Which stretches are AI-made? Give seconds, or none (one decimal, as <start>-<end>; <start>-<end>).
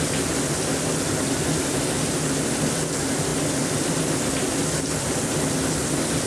none